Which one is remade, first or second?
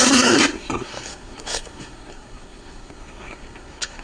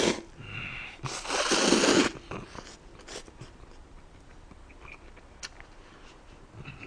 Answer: first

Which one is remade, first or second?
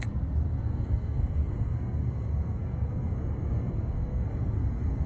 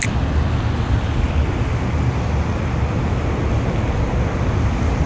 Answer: first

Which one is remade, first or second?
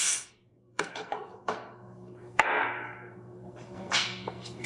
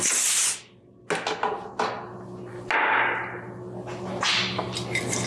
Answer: first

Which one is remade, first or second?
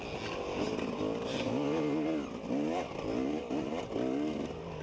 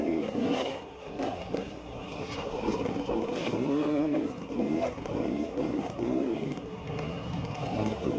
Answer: second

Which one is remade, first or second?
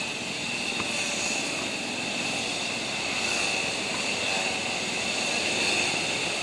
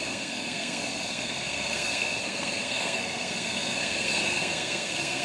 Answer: second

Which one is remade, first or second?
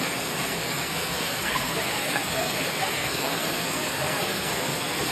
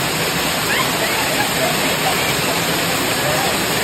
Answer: first